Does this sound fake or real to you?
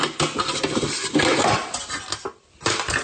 real